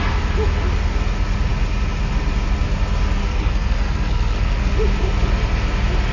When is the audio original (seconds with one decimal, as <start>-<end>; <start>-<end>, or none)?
0.0-3.2; 4.7-6.1